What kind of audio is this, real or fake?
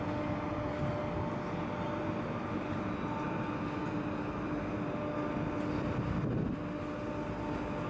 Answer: real